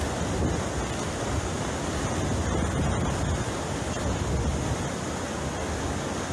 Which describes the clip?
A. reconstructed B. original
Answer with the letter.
B